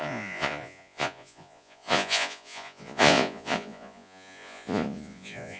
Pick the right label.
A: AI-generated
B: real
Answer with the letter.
A